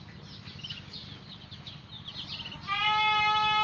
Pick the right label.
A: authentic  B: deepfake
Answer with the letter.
A